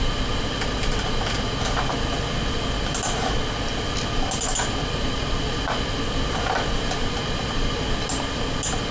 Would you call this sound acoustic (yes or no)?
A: yes